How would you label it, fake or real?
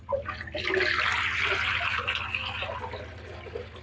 real